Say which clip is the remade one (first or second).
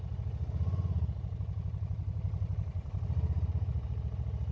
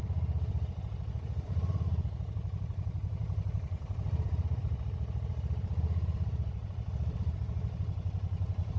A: second